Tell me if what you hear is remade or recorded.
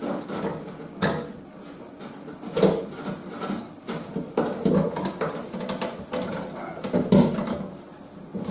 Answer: recorded